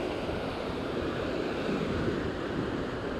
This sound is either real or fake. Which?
fake